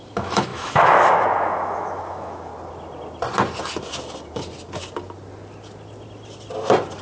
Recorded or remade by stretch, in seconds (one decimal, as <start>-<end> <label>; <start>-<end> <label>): 0.0-2.5 remade; 2.5-7.0 recorded